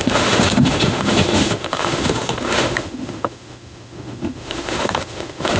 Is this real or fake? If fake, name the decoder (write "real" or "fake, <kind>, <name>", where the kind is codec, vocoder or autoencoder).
fake, autoencoder, DAC-VAE